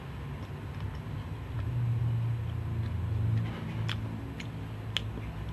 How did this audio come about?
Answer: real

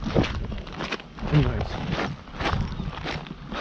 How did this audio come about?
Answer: real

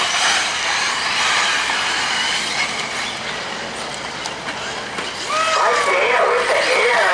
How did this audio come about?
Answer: real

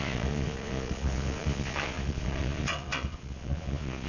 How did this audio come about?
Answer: fake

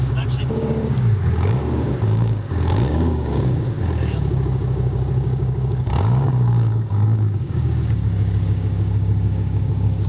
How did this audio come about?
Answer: fake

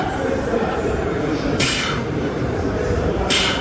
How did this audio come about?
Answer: fake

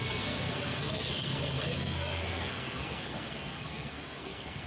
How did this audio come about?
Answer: fake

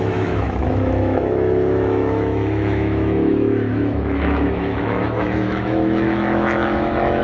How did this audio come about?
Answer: fake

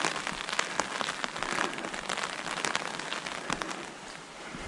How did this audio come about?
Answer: real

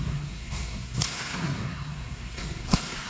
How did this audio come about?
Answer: fake